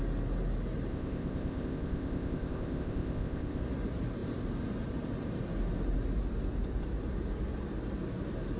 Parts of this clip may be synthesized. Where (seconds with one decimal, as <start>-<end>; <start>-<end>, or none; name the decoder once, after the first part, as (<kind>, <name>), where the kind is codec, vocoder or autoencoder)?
0.9-3.6 (codec, ZipCodec)